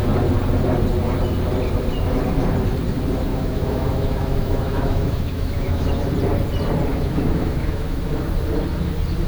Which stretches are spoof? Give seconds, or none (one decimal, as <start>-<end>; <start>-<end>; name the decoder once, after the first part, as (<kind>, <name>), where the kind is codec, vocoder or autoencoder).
3.3-5.9 (autoencoder, DAC-VAE); 6.9-8.1